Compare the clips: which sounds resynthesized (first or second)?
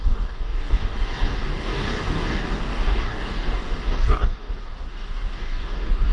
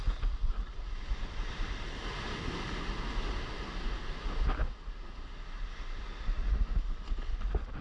first